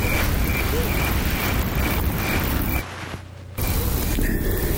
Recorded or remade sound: recorded